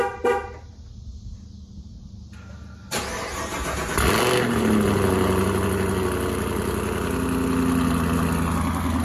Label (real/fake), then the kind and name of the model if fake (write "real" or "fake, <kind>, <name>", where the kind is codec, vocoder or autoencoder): real